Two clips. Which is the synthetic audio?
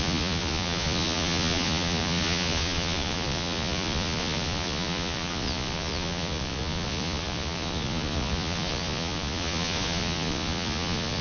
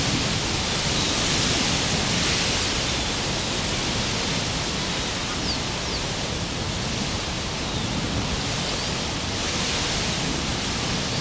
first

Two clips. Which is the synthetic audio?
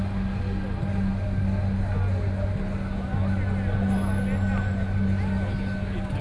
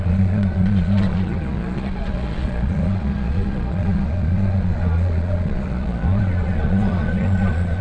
second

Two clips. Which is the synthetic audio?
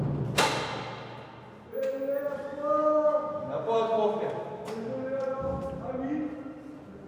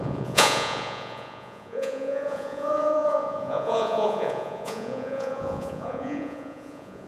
second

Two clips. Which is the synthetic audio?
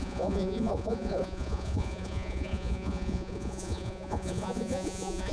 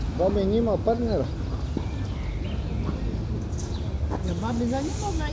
first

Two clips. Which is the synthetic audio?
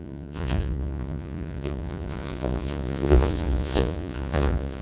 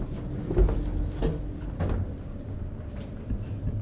first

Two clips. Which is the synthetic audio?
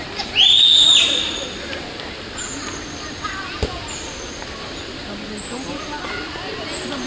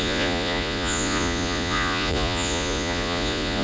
second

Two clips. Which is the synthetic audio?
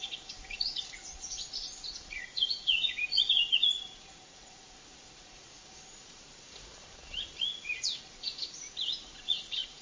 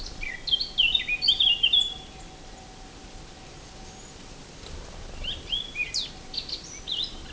first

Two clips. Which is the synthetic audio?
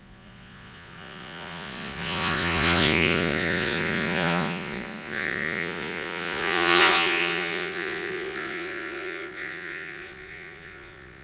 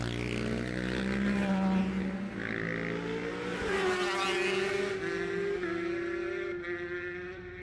first